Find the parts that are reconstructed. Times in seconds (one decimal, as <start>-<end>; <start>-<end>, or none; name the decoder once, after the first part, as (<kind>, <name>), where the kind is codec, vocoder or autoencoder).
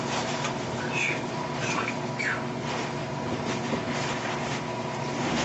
none